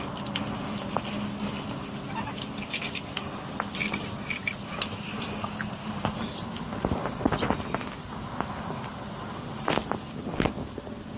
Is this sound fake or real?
real